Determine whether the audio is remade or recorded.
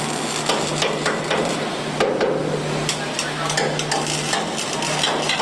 recorded